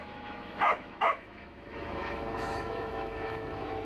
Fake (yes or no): yes